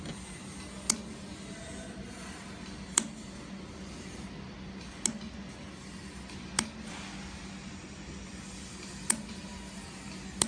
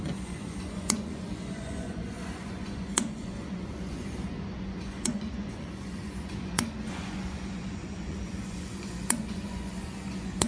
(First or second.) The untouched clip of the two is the first